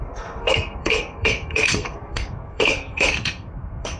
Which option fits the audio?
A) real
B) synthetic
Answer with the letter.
B